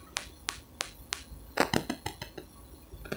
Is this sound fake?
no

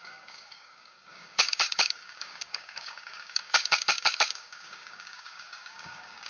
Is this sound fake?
yes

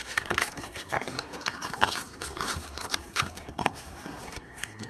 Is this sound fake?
yes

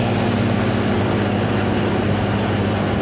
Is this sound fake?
no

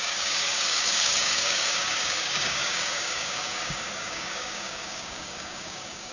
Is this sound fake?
yes